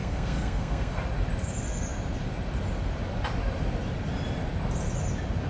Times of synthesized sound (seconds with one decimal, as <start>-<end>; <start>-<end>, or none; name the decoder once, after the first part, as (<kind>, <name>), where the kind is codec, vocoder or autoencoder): 0.0-1.0 (codec, SNAC)